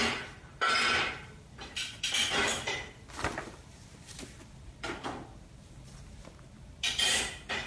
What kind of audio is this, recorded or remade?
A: remade